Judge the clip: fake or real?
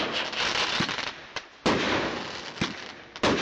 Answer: real